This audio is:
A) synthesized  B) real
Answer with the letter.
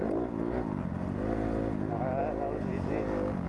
B